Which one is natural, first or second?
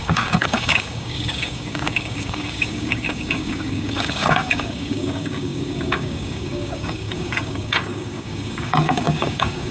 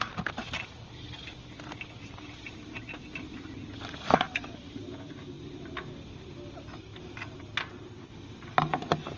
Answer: second